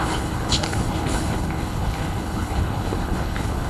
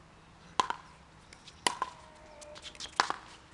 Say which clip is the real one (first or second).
second